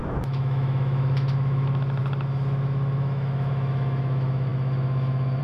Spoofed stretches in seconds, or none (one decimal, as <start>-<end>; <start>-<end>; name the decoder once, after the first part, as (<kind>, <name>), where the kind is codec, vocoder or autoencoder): 0.0-5.4 (autoencoder, DAC-VAE)